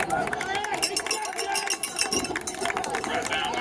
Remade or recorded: recorded